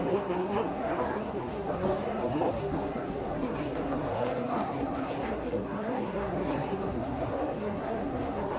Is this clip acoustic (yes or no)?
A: no